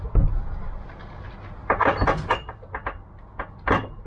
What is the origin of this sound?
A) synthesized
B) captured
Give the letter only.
B